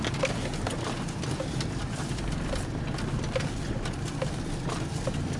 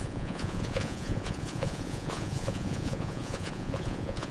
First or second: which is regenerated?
second